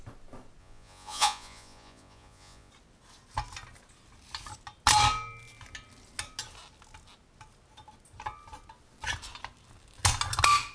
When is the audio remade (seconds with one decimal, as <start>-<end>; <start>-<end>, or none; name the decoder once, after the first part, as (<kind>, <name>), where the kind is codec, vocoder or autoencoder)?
0.6-2.7 (vocoder, Vocos)